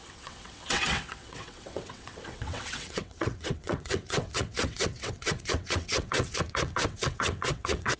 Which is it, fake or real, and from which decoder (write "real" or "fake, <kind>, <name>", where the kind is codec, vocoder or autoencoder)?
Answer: fake, vocoder, WaveNeXt